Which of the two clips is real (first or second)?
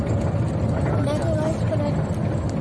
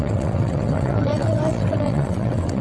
first